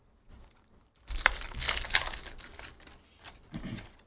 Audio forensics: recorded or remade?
recorded